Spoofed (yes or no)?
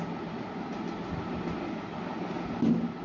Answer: no